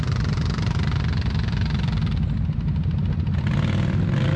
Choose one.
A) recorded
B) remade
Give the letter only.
A